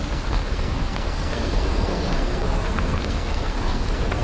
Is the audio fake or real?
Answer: fake